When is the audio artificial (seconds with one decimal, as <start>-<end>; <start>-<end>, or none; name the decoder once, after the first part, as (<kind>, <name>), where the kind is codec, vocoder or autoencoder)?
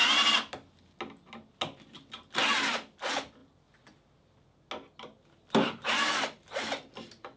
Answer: none